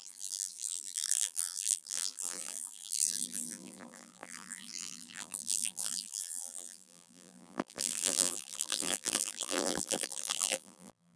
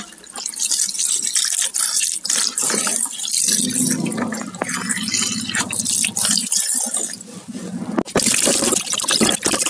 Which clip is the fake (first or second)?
first